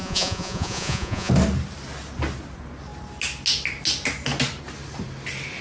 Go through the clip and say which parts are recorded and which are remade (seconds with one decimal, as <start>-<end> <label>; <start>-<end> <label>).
0.0-1.3 remade; 1.3-5.6 recorded